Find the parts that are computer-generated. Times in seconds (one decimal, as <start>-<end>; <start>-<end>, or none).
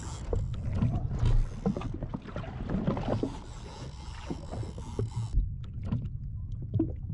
none